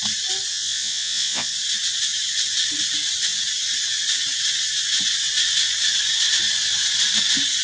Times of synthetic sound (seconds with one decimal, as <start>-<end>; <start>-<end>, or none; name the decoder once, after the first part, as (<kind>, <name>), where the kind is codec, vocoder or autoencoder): 0.5-1.5 (vocoder, Vocos)